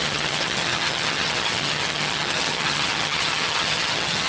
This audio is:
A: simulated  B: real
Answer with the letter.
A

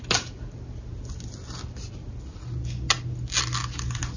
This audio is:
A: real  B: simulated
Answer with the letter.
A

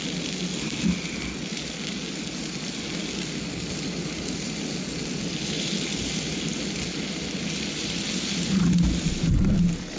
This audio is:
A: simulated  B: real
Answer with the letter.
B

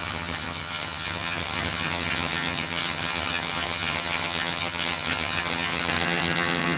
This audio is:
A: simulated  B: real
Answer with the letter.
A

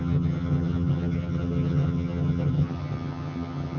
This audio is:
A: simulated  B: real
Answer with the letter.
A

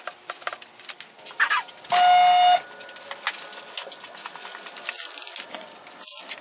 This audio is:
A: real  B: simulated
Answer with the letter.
A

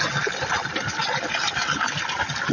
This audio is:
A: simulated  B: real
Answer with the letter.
B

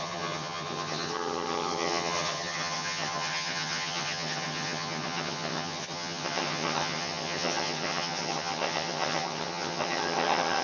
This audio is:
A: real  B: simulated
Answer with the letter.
B